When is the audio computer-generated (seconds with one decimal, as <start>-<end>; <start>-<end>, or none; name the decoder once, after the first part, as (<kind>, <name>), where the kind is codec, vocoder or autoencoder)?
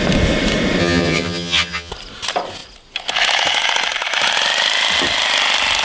0.8-1.9 (vocoder, HiFi-GAN)